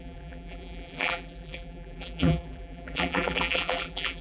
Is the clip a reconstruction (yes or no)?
yes